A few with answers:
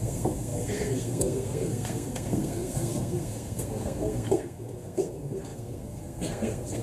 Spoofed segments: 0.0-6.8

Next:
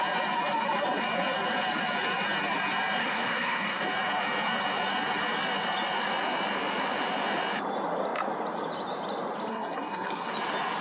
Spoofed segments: 3.0-3.8; 9.5-10.3

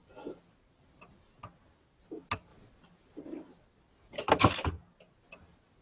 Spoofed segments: none

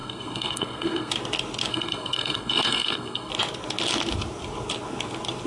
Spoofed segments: 0.0-1.1; 1.7-3.3

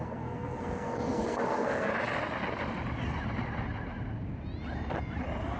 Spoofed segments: 0.0-1.9

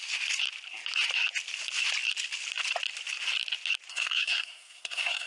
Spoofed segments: 3.9-5.3